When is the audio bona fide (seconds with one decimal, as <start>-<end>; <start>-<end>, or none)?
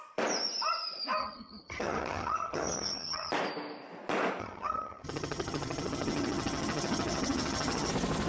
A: 0.0-1.2; 3.3-4.4; 7.9-8.3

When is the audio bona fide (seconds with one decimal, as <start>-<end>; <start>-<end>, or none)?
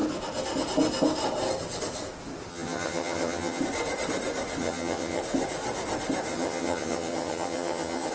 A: 0.0-2.5; 3.6-4.6; 5.2-6.3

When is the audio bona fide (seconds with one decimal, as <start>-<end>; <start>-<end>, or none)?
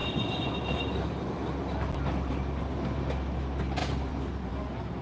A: 0.0-5.0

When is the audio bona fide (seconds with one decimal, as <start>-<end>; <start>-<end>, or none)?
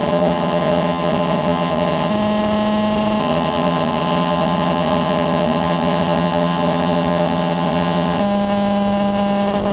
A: 2.1-3.2; 8.2-9.7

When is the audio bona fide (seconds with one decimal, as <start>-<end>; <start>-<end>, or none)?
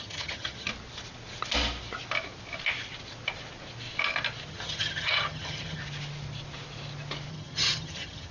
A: 0.7-4.5; 5.8-7.3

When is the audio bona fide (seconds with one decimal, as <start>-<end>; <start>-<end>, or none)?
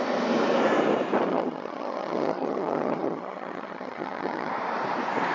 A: 0.0-1.3; 4.5-5.3